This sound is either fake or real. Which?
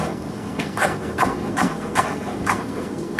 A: fake